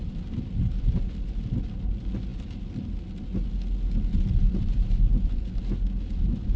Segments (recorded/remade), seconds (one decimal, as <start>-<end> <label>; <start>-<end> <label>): 0.0-6.6 recorded